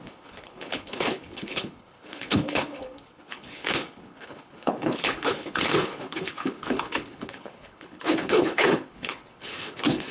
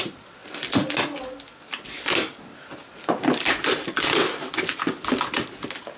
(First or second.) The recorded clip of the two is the second